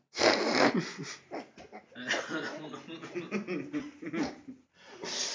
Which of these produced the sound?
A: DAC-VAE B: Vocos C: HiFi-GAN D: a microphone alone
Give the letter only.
D